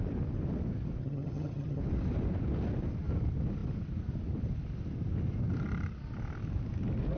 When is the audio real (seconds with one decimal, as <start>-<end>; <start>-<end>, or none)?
0.0-1.0; 1.8-7.2